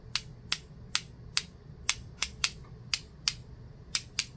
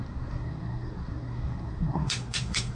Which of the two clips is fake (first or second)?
second